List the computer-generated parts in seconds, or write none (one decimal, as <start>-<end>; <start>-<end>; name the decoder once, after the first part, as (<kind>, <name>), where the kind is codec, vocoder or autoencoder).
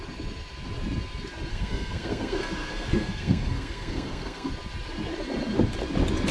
1.5-4.5 (codec, SNAC)